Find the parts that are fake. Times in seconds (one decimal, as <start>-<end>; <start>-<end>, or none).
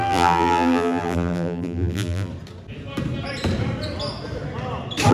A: 0.0-2.3